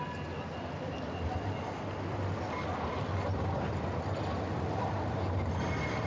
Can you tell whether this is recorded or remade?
recorded